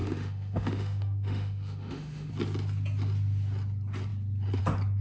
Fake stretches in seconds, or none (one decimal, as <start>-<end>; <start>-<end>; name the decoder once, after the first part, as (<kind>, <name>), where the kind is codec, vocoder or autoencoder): 0.0-2.3 (autoencoder, DAC-VAE)